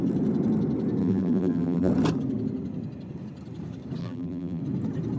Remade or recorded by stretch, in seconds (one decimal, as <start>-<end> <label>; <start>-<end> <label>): 0.0-1.0 recorded; 1.0-1.9 remade; 1.9-4.0 recorded; 4.0-4.6 remade; 4.6-5.2 recorded